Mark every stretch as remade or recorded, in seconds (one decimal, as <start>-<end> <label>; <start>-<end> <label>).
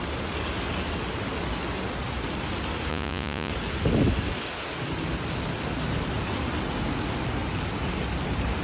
0.0-2.9 recorded; 2.9-3.5 remade; 3.5-8.6 recorded